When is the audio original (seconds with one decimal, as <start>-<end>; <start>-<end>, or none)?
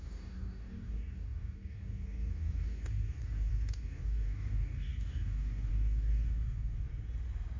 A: 6.9-7.6